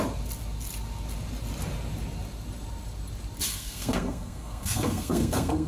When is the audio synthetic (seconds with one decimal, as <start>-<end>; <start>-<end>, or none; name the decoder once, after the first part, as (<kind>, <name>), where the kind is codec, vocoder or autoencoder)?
3.5-5.7 (codec, SNAC)